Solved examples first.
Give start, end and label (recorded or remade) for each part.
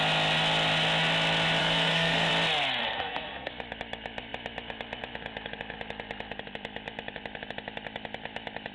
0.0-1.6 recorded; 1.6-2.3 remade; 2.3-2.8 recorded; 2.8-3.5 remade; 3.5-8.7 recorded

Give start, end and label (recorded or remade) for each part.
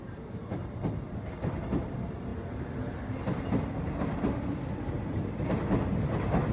0.0-6.5 recorded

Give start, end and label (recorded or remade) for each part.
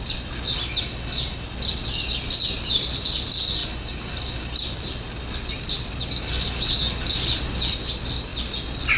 0.0-9.0 recorded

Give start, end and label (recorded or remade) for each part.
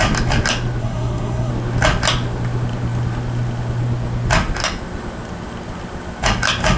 0.0-0.8 recorded; 0.8-1.5 remade; 1.5-6.8 recorded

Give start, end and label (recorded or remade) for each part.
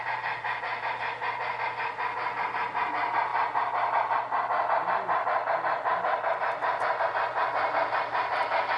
0.0-8.8 recorded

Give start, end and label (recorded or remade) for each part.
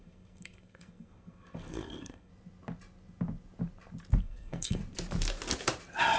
0.0-2.3 remade; 2.3-4.2 recorded; 4.2-4.8 remade; 4.8-6.2 recorded